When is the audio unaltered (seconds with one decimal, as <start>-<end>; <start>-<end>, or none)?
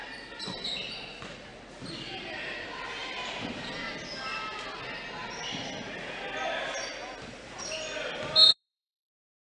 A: 1.5-2.2; 3.0-7.2